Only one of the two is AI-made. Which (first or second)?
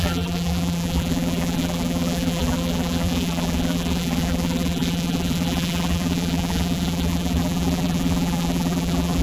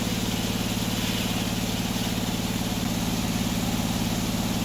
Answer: first